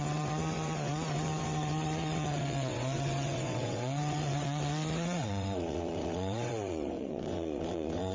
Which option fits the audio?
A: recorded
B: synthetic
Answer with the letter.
B